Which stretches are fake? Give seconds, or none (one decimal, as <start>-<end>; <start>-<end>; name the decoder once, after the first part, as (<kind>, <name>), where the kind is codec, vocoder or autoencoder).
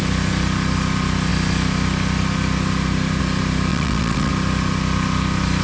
3.7-4.3 (vocoder, WaveNeXt)